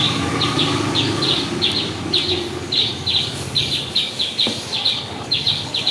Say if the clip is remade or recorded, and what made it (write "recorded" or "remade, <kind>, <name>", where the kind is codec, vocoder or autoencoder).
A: remade, codec, DAC